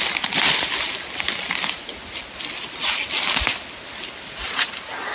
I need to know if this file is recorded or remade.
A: recorded